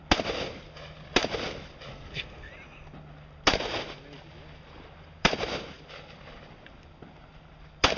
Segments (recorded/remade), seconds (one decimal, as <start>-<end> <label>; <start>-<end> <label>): 0.0-1.9 recorded; 1.9-2.5 remade; 2.5-8.0 recorded